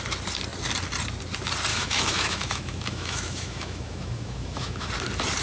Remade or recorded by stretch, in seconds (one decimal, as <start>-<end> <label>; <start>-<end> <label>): 0.0-1.7 recorded; 1.7-4.9 remade; 4.9-5.4 recorded